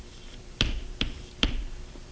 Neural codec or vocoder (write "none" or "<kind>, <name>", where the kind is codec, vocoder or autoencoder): vocoder, BigVGAN v2